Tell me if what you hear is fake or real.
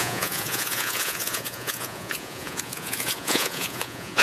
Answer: fake